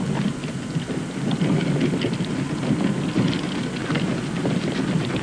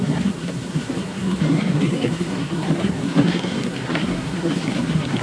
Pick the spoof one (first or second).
second